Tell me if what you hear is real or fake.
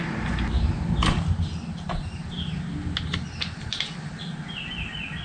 real